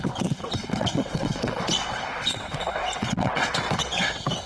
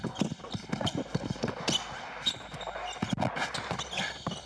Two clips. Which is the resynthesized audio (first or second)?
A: first